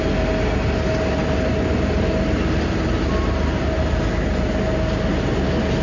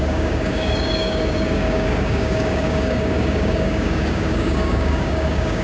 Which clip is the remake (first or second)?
second